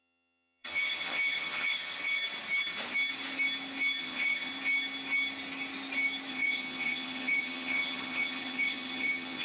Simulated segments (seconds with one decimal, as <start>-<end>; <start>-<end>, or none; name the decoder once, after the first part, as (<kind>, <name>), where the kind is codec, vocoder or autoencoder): 0.0-2.2 (vocoder, HiFi-GAN); 4.0-4.5; 6.3-9.4